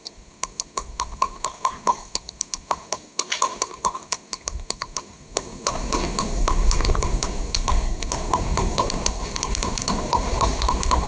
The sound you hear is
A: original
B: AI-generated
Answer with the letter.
B